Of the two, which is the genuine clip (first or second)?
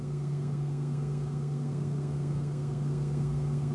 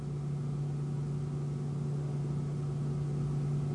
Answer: second